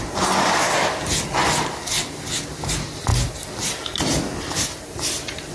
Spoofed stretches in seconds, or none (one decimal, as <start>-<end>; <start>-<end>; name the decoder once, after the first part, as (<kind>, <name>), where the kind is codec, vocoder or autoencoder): 0.0-1.4 (vocoder, BigVGAN v2); 2.5-3.1; 3.9-5.5